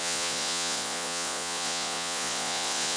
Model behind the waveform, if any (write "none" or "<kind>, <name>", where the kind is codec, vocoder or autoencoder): vocoder, Vocos